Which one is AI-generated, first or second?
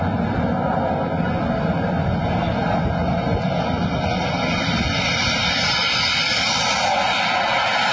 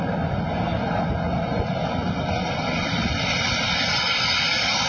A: second